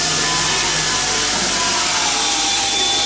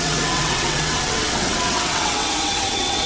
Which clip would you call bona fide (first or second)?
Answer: first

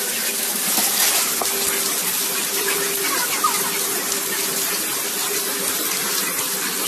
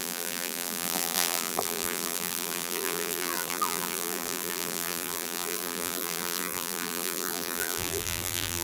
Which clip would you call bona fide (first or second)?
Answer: first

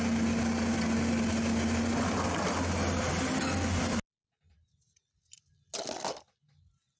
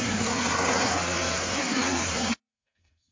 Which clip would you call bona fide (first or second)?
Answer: first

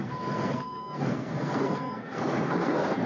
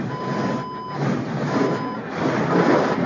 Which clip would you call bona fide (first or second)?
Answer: second